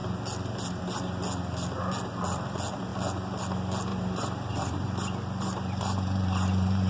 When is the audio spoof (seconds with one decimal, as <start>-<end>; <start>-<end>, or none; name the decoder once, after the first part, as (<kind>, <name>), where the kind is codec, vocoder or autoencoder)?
3.9-6.9 (vocoder, BigVGAN v2)